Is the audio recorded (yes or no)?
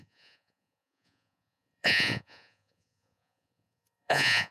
no